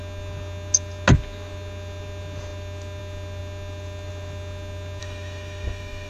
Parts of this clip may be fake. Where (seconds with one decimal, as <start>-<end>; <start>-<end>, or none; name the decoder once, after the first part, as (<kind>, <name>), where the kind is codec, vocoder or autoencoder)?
5.0-6.1 (autoencoder, DAC-VAE)